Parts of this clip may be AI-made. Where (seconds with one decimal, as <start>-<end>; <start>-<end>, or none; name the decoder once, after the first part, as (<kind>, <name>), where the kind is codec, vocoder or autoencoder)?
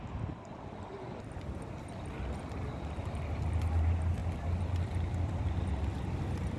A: none